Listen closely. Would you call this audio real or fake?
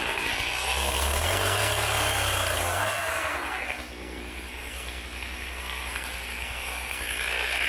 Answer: fake